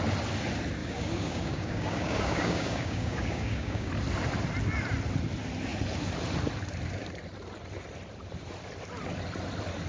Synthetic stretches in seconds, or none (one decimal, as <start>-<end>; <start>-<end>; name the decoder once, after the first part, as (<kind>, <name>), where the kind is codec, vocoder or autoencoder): 0.8-3.9 (codec, DAC)